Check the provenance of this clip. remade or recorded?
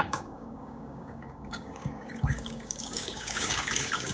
remade